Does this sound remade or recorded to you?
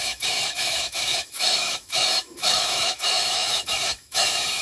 remade